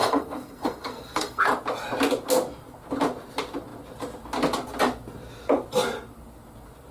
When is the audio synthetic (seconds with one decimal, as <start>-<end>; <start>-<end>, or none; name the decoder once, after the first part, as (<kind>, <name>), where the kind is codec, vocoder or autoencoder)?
0.0-1.4 (codec, SNAC)